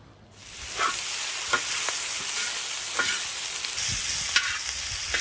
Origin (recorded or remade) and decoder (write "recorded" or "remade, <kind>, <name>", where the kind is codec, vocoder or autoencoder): recorded